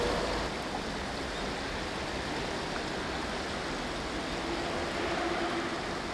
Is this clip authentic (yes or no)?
yes